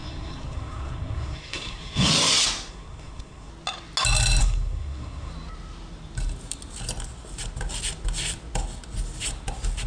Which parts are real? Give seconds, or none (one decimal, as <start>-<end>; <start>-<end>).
2.1-2.7; 3.5-4.4; 5.3-9.9